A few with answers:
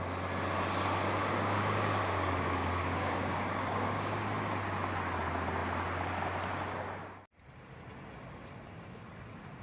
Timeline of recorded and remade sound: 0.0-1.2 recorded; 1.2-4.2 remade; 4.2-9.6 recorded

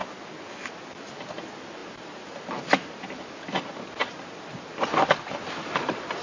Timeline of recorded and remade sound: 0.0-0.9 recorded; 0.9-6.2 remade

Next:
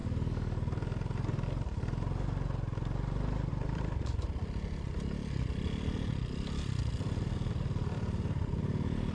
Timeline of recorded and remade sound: 0.0-3.5 recorded; 3.5-9.1 remade

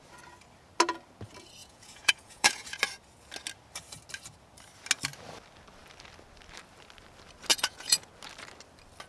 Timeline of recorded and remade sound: 0.0-1.6 recorded; 1.6-2.8 remade; 2.8-7.5 recorded; 7.5-8.1 remade; 8.1-9.1 recorded

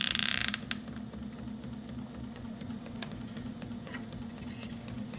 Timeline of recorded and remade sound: 0.0-0.4 remade; 0.4-2.3 recorded; 2.3-5.2 remade